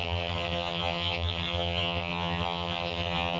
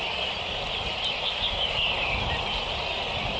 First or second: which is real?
second